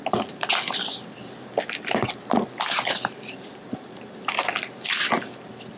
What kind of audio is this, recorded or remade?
recorded